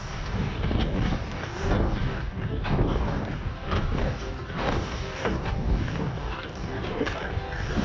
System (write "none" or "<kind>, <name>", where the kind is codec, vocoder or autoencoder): codec, DAC